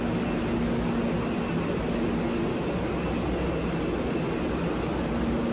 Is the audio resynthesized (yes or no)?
no